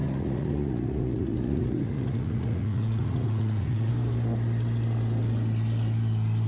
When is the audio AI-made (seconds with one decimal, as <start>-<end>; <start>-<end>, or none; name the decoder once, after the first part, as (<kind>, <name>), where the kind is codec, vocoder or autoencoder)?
0.0-3.9 (vocoder, Vocos)